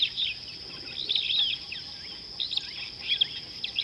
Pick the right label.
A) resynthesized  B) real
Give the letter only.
B